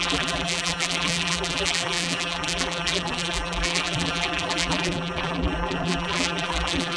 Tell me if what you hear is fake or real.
fake